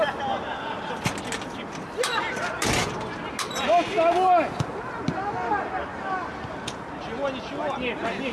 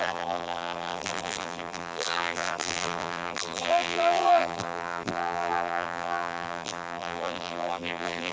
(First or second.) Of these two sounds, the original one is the first